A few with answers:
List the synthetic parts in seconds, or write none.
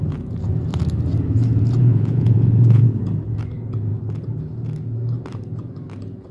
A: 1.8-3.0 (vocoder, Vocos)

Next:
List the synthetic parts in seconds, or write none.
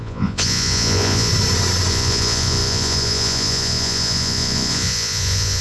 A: 0.0-1.3 (vocoder, Vocos); 1.9-5.6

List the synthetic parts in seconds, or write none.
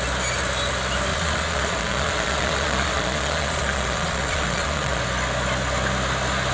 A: 1.1-5.0 (vocoder, Vocos)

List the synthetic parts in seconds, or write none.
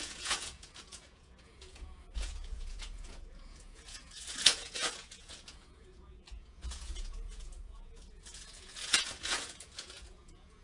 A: 0.0-10.6 (vocoder, Vocos)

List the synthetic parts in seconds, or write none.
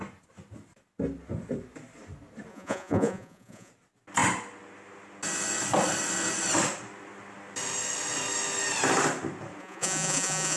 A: 2.5-3.7 (vocoder, Vocos); 9.6-10.6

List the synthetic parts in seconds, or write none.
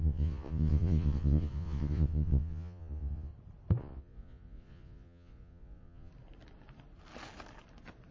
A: 0.0-3.3 (vocoder, Vocos); 3.8-6.1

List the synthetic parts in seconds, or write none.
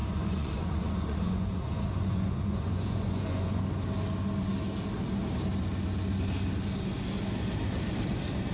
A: 0.0-3.6 (vocoder, Vocos)